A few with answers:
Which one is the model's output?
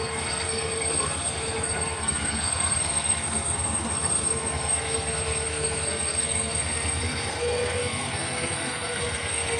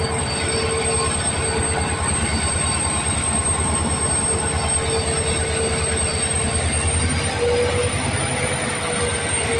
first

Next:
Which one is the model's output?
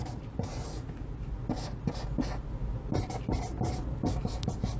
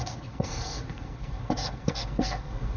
second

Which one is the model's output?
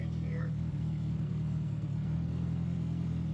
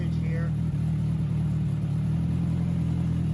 first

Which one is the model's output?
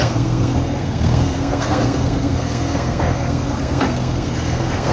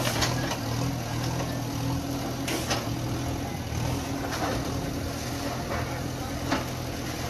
first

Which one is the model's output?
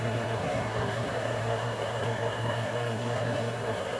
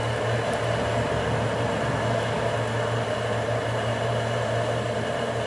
first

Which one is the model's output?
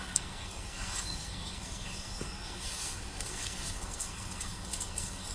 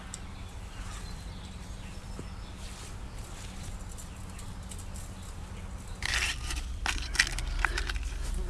first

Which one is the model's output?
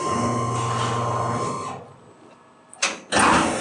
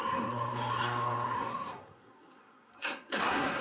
second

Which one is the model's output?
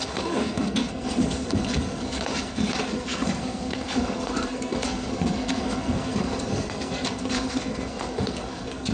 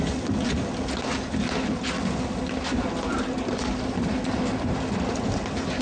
first